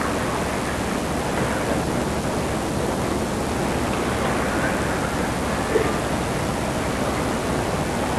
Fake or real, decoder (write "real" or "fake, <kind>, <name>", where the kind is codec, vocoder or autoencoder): real